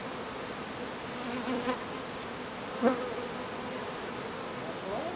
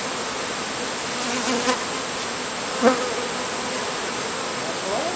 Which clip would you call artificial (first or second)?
first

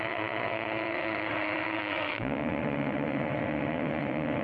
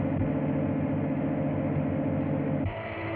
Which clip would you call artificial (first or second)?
first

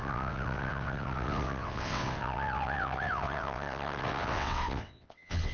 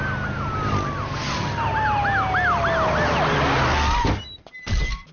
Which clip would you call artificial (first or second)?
first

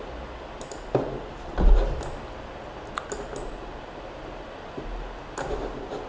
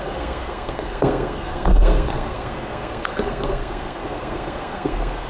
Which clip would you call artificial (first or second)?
second